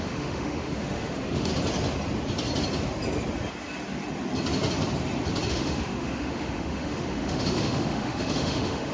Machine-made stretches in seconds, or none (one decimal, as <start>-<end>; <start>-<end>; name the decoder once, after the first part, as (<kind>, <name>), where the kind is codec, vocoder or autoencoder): 0.0-1.5 (autoencoder, DAC-VAE); 5.5-8.9